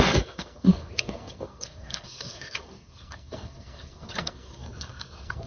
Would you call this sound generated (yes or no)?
yes